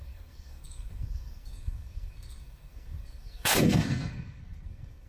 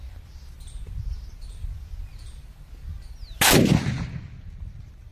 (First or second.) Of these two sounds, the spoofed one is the first